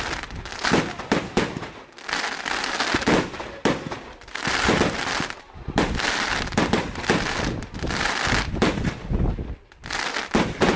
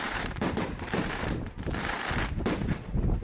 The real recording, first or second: first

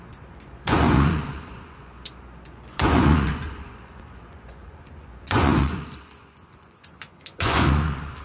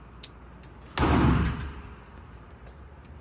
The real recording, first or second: second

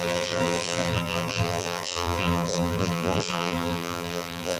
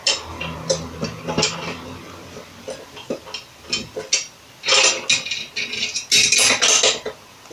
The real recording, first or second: second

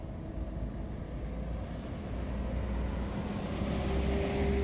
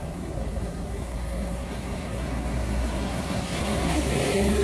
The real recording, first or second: first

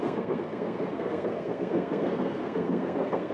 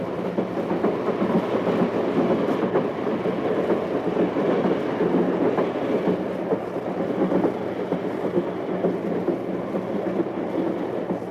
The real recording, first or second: second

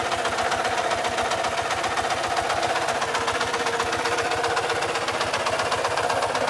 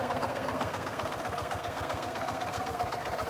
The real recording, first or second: first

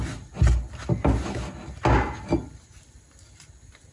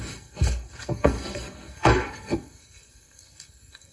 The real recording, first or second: first